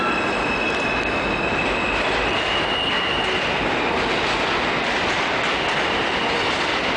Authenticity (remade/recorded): recorded